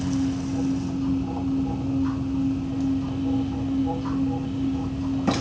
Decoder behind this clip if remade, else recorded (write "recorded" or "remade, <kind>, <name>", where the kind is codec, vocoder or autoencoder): recorded